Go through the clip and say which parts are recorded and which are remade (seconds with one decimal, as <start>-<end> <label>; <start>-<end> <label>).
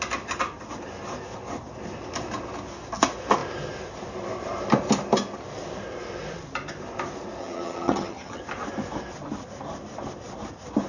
0.0-7.4 recorded; 7.4-8.4 remade; 8.4-10.9 recorded